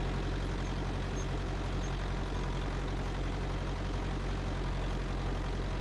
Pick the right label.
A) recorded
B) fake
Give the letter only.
A